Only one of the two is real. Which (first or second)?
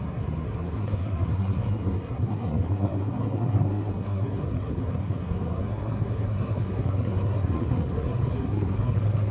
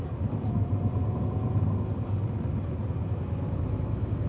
second